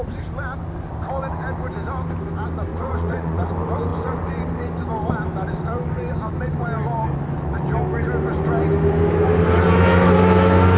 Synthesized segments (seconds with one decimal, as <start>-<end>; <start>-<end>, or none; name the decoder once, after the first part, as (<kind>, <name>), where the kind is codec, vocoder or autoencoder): 2.7-3.5 (vocoder, Vocos)